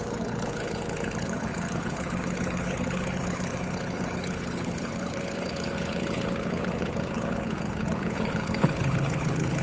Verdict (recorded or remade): remade